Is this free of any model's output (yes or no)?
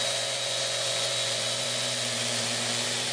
no